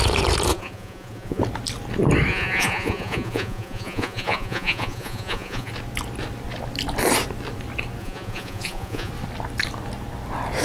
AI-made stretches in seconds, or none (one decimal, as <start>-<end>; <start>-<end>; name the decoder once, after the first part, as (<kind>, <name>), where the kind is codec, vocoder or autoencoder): 0.5-1.4 (vocoder, Vocos); 2.3-5.7; 8.0-9.1